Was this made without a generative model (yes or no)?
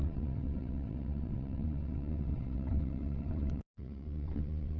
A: no